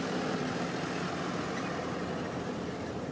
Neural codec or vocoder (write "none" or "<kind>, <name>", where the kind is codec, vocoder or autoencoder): none